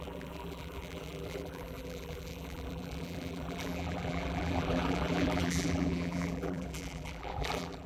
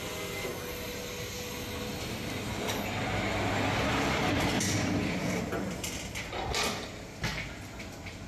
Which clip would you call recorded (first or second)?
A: second